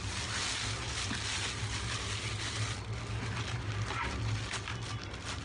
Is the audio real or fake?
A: real